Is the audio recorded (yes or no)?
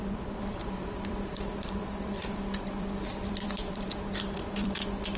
no